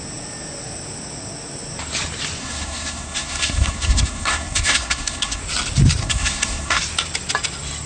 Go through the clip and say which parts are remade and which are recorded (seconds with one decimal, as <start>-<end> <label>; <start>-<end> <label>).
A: 0.0-2.4 recorded; 2.4-5.4 remade; 5.4-6.0 recorded; 6.0-6.8 remade; 6.8-7.9 recorded